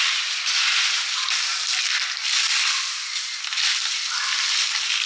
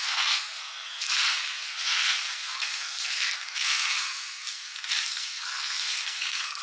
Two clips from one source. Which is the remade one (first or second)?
second